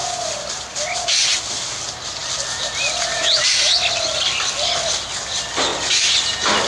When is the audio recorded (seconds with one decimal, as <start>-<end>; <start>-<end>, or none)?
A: 0.0-2.2; 5.0-6.7